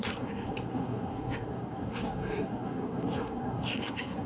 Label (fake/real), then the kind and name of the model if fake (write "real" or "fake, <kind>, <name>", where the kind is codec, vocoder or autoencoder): fake, codec, SNAC